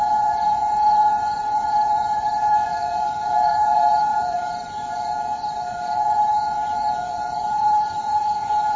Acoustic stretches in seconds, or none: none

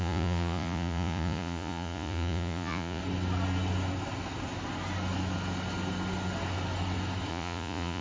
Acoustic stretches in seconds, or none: 3.0-7.3

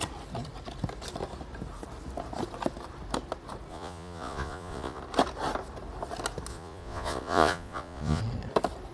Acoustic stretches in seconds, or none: 0.0-3.7; 5.0-6.5; 8.2-8.9